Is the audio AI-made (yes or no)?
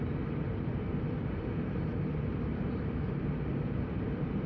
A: yes